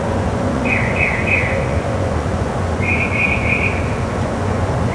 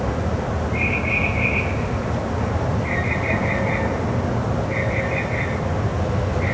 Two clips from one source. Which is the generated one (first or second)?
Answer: first